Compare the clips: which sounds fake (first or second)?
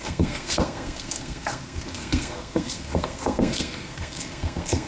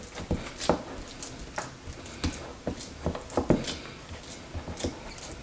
first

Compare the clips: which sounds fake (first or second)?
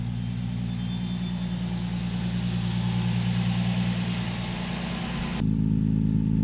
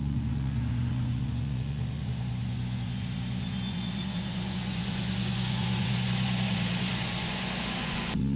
second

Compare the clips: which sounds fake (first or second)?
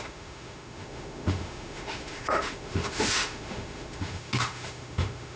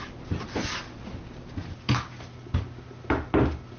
first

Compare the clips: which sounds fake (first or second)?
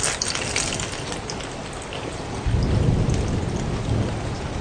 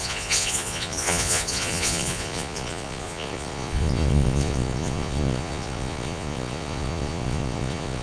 second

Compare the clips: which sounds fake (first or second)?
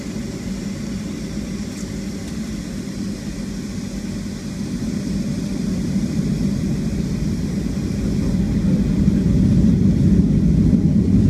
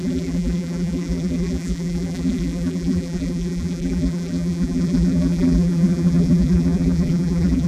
second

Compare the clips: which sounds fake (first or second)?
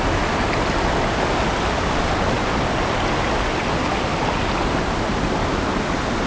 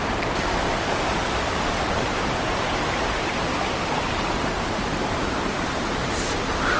second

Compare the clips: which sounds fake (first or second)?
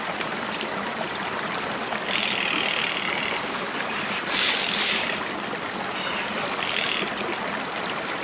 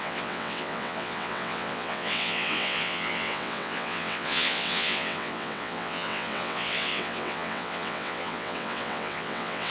second